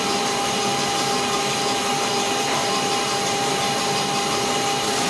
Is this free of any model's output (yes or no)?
yes